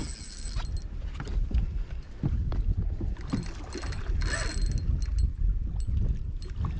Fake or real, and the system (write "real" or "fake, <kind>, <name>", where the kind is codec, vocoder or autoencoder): real